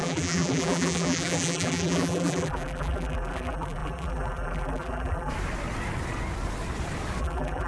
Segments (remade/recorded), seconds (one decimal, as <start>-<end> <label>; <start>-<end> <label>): 0.0-5.3 remade; 5.3-7.2 recorded; 7.2-7.7 remade